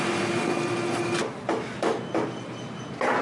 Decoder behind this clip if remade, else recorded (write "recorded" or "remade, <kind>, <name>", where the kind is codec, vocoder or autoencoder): recorded